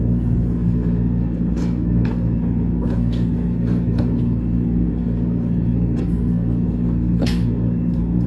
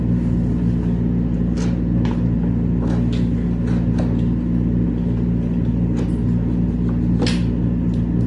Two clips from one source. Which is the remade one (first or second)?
first